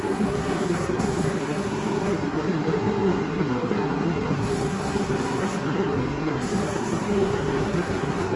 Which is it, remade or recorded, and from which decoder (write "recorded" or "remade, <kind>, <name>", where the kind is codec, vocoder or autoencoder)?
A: remade, codec, SNAC